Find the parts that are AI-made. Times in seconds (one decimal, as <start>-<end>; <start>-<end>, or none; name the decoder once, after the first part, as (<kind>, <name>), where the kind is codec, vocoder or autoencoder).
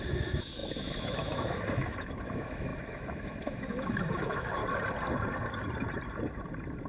0.0-4.6 (autoencoder, DAC-VAE)